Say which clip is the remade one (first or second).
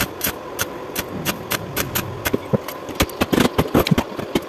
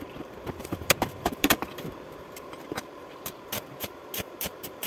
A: second